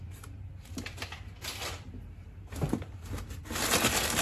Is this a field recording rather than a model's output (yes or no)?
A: yes